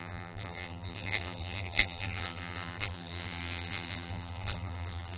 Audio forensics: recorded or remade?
remade